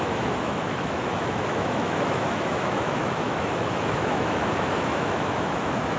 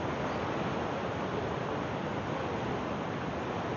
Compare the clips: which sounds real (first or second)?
second